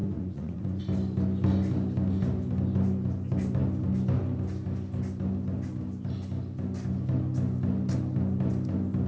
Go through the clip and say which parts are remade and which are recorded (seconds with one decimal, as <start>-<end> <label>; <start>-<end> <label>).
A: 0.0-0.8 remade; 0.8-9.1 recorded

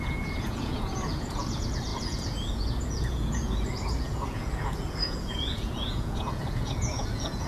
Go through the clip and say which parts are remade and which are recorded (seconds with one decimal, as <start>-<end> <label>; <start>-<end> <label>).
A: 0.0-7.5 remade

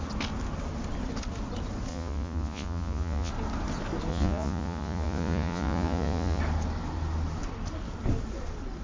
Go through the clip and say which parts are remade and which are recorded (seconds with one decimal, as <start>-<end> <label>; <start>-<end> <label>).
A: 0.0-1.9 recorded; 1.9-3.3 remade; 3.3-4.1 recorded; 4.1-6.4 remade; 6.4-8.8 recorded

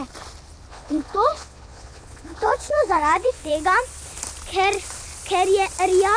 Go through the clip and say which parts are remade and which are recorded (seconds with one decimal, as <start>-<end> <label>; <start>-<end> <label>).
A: 0.0-0.7 recorded; 0.7-3.5 remade; 3.5-6.2 recorded

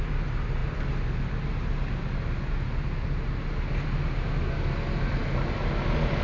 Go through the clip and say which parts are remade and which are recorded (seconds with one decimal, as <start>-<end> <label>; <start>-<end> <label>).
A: 0.0-6.2 recorded